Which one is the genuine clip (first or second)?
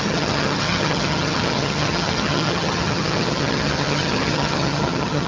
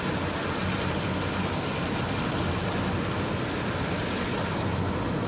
second